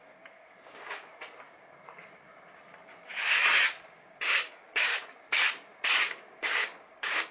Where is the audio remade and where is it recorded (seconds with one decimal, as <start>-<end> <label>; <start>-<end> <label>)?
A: 0.0-1.1 remade; 1.1-3.9 recorded; 3.9-4.9 remade; 4.9-6.3 recorded; 6.3-7.3 remade